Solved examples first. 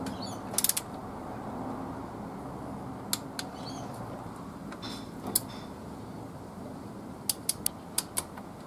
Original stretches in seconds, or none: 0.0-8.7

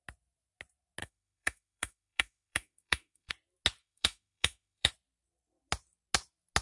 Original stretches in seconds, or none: 0.0-1.0; 3.3-3.8; 4.9-6.6

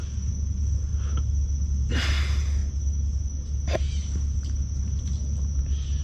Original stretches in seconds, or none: 0.0-6.0